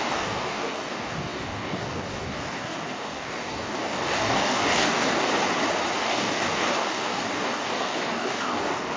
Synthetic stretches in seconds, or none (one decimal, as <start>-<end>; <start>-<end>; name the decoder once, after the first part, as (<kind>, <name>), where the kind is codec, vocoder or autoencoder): 0.0-5.3 (codec, DAC); 6.0-9.0